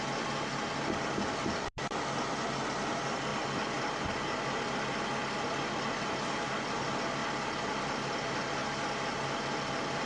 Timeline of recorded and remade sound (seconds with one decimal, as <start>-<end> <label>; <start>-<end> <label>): 0.0-10.1 recorded